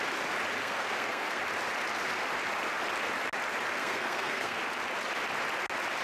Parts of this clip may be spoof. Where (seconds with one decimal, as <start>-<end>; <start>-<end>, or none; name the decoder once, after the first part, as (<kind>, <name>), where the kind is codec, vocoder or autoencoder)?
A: 0.6-1.4 (codec, SNAC); 3.8-4.6